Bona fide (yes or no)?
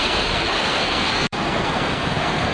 no